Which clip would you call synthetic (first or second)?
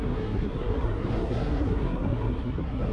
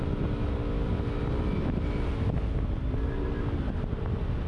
first